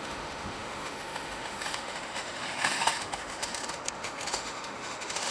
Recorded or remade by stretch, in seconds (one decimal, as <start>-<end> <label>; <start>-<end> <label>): 0.0-5.3 remade